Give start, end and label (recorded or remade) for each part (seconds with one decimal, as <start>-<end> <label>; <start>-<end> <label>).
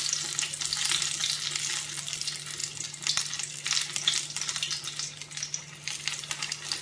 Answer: 0.0-6.8 recorded